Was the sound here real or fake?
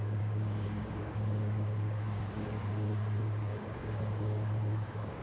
fake